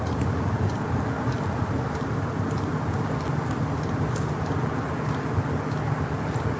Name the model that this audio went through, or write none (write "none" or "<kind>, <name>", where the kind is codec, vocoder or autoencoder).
none